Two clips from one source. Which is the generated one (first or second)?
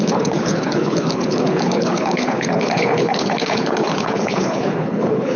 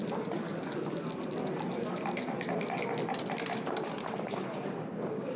first